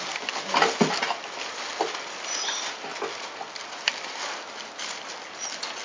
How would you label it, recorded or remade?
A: recorded